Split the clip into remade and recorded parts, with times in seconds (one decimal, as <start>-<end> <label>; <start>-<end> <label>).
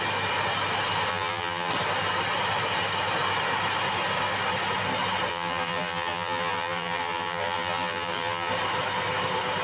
0.0-1.1 recorded; 1.1-1.7 remade; 1.7-5.3 recorded; 5.3-8.5 remade; 8.5-9.6 recorded